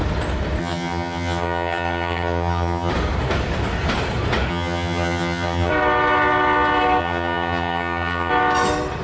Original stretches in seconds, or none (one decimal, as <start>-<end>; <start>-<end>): 0.0-0.6; 2.9-4.5; 5.7-7.0; 8.3-9.0